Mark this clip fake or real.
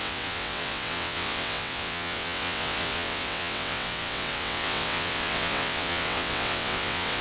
fake